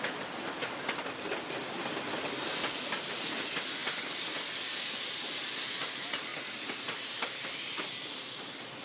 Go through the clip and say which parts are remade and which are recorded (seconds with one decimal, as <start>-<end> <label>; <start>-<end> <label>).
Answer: 0.0-8.8 recorded